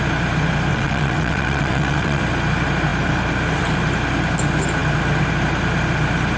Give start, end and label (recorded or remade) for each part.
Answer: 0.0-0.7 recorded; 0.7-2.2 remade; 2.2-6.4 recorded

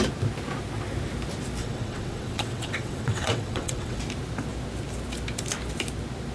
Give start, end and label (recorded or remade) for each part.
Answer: 0.0-1.6 recorded; 1.6-4.0 remade; 4.0-6.3 recorded

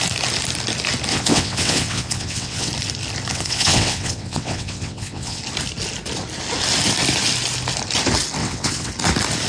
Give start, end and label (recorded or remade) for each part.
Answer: 0.0-1.1 recorded; 1.1-2.7 remade; 2.7-3.3 recorded; 3.3-5.4 remade; 5.4-8.4 recorded; 8.4-8.9 remade; 8.9-9.5 recorded

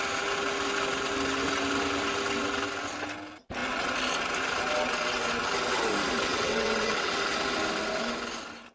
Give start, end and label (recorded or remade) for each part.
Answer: 0.0-6.3 recorded; 6.3-7.1 remade; 7.1-8.7 recorded

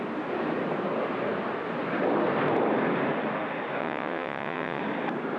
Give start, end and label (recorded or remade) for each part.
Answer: 0.0-3.8 recorded; 3.8-4.8 remade; 4.8-5.4 recorded

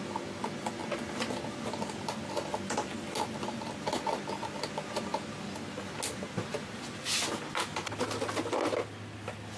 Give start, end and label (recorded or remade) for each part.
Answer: 0.0-9.6 recorded

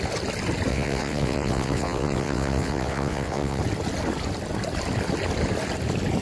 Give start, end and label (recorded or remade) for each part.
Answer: 0.0-0.7 recorded; 0.7-3.6 remade; 3.6-6.2 recorded

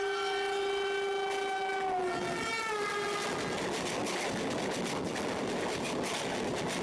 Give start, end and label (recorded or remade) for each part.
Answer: 0.0-6.8 recorded